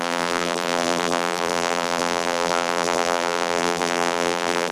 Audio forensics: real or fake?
fake